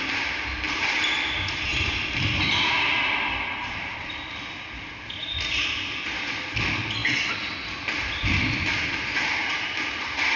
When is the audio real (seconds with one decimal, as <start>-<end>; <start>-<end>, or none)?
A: 0.0-10.4